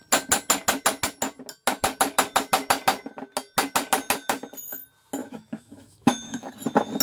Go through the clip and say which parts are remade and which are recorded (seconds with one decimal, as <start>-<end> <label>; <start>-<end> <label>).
0.0-5.2 recorded; 5.2-6.5 remade; 6.5-7.0 recorded